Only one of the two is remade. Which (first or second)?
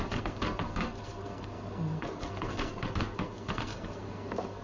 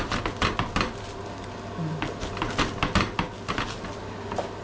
first